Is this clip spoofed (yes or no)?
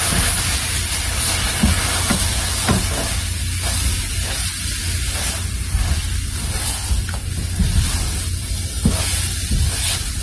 no